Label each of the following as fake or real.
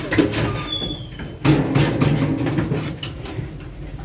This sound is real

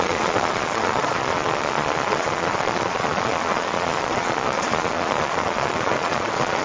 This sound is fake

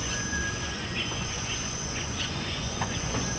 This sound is fake